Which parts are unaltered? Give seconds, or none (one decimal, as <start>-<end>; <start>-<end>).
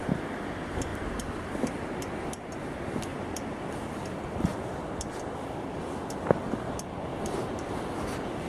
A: 0.0-0.9; 2.3-3.1; 3.7-7.1; 8.0-8.5